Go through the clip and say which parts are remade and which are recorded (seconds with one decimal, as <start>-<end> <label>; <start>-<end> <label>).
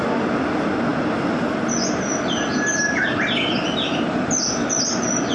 0.0-5.3 recorded